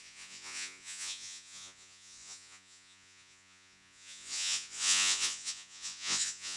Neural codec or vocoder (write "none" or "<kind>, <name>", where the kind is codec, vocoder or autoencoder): vocoder, Vocos